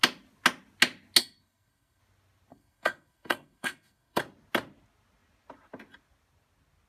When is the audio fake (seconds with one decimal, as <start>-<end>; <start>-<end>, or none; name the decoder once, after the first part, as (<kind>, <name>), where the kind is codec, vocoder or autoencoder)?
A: 1.2-2.0 (codec, SNAC); 2.5-4.2